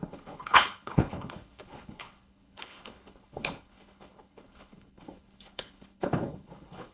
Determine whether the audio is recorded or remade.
remade